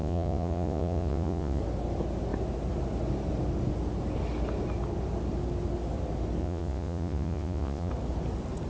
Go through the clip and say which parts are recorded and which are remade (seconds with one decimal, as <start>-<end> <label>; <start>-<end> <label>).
0.0-1.6 remade; 1.6-6.4 recorded; 6.4-7.9 remade; 7.9-8.7 recorded